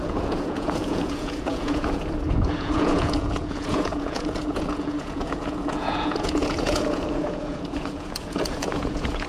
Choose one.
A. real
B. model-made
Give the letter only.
B